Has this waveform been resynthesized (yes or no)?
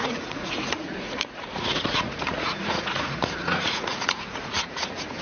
yes